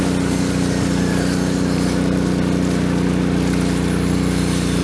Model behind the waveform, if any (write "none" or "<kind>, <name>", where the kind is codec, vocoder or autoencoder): none